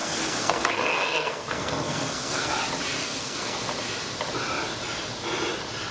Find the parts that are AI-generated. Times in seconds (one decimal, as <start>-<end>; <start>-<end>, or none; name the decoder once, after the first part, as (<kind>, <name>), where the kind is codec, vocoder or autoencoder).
0.0-2.6 (codec, SNAC); 3.0-3.7

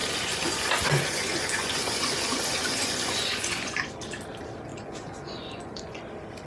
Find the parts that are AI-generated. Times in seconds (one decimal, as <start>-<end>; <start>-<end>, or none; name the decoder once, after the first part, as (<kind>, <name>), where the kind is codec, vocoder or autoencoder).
0.0-3.9 (vocoder, Vocos); 4.7-6.0